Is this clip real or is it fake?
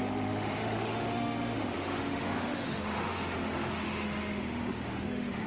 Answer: fake